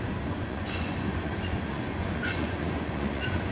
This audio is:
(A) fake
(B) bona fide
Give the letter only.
A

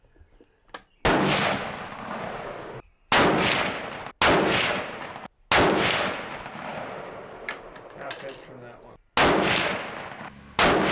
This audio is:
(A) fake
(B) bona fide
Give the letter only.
B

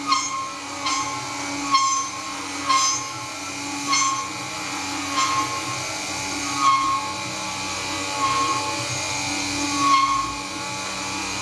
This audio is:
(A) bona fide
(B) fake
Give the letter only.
A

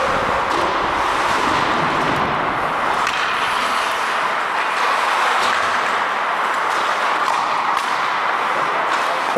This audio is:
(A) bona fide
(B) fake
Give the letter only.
A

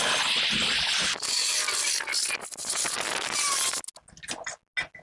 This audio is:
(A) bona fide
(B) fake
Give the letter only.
A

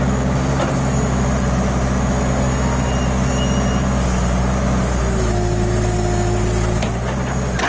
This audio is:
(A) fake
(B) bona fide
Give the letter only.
B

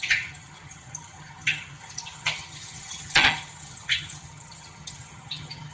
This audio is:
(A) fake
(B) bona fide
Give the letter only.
A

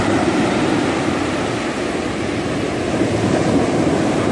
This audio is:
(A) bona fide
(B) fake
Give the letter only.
B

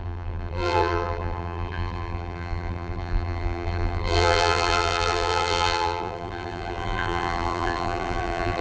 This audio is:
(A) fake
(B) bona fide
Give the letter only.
A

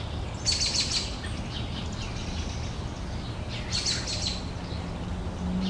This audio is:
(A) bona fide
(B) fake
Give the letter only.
A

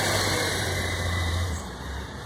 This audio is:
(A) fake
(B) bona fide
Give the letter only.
A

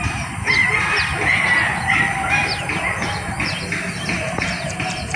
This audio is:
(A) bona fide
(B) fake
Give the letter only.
A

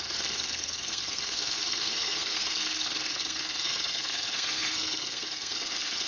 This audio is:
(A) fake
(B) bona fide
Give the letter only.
A